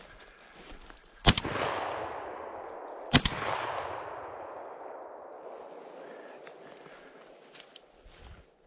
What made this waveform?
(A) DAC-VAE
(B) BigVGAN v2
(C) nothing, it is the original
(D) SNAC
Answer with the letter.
C